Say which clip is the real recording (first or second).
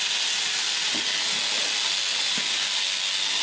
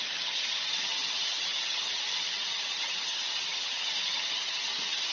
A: first